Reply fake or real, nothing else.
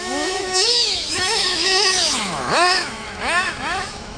fake